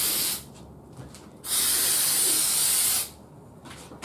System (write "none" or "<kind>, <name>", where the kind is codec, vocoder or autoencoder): none